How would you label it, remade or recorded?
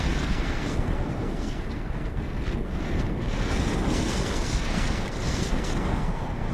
remade